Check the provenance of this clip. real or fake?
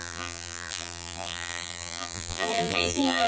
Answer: fake